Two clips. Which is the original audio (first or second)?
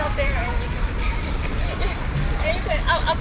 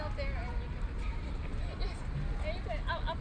second